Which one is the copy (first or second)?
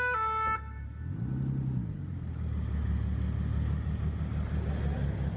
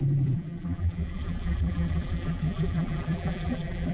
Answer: second